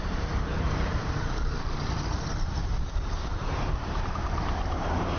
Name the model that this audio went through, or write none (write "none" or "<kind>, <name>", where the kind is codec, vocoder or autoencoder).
vocoder, BigVGAN v2